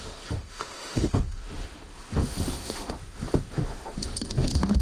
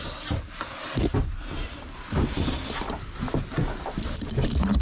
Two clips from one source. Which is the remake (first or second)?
first